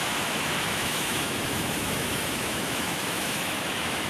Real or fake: fake